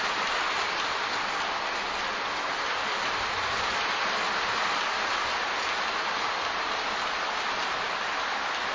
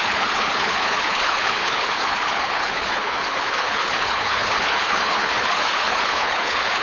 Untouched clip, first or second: first